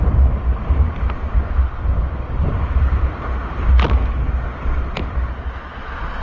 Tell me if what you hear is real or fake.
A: real